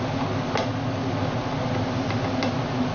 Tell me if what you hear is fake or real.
real